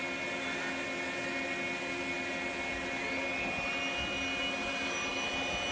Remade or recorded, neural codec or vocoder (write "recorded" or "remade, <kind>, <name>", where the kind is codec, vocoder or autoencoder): recorded